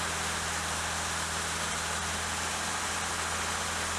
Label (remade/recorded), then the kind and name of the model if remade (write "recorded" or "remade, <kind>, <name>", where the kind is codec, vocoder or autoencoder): recorded